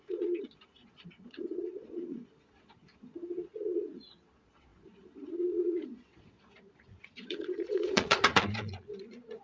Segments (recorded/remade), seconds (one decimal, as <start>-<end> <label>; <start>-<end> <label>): 0.0-9.4 remade